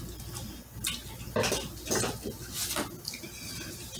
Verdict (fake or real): real